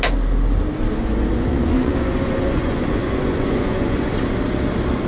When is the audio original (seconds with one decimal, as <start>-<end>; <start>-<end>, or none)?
0.0-1.0; 4.1-5.1